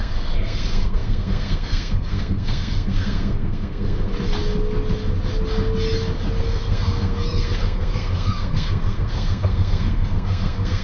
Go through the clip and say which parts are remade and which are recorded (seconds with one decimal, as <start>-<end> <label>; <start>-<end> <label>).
0.0-4.1 remade; 4.1-6.4 recorded; 6.4-10.8 remade